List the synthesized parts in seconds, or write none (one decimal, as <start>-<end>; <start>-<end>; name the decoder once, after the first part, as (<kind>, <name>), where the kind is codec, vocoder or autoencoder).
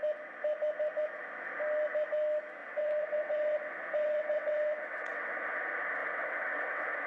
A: 2.6-5.6 (vocoder, WaveNeXt); 6.0-7.1